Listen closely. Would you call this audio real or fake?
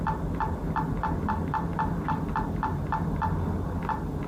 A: real